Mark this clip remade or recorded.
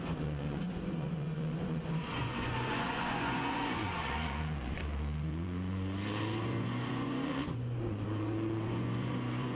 remade